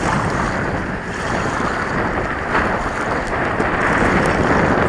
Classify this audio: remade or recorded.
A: recorded